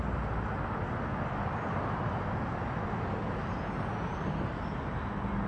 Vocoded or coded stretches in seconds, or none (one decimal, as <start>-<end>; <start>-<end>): none

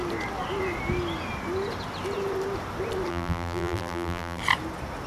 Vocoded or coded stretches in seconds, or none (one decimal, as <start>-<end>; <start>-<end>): 3.1-4.4

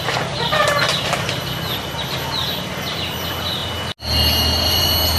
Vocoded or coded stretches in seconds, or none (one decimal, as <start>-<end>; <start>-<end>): none

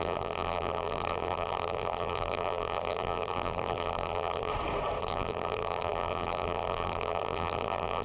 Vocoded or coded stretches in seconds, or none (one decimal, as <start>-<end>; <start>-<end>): 0.0-4.5; 5.0-8.0

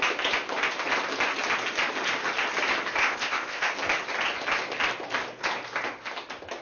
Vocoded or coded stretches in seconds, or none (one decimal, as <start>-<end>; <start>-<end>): 3.0-3.7

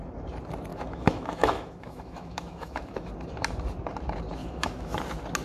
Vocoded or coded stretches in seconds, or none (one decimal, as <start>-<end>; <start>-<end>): 0.7-3.1; 4.4-5.0

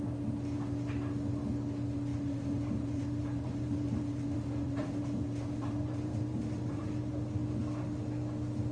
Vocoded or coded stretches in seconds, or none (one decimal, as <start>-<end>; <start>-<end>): 2.1-6.9

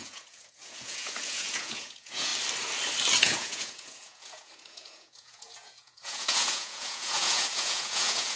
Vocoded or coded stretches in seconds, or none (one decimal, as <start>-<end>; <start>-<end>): 0.0-2.3; 3.2-8.4